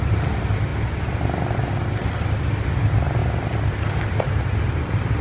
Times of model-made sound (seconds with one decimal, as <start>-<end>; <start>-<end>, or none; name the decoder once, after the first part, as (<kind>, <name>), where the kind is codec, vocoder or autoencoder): none

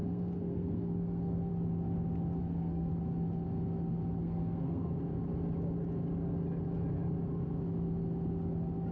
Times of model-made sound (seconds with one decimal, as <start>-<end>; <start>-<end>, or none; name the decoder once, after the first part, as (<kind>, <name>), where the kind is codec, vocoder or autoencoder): 0.0-1.5 (codec, SNAC); 2.4-2.9; 4.2-4.9